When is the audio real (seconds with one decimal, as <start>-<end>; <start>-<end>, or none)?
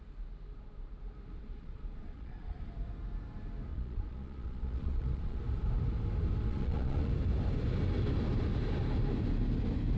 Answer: 0.0-1.4; 2.6-3.7; 5.4-6.5; 7.1-10.0